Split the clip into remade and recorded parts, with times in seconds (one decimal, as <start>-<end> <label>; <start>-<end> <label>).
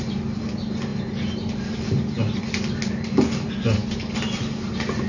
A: 0.0-5.1 recorded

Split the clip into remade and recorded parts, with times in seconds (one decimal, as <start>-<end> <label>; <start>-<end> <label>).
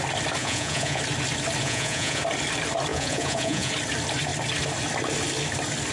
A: 0.0-0.4 recorded; 0.4-1.0 remade; 1.0-1.6 recorded; 1.6-2.2 remade; 2.2-2.9 recorded; 2.9-3.7 remade; 3.7-5.9 recorded